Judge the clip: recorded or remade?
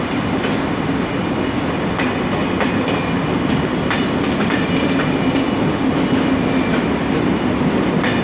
recorded